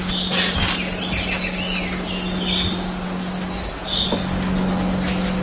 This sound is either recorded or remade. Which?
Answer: recorded